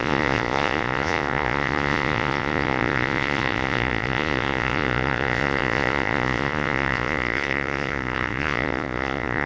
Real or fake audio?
fake